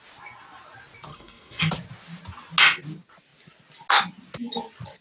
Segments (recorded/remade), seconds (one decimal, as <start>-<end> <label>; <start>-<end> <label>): 0.0-1.1 recorded; 1.1-1.7 remade; 1.7-5.0 recorded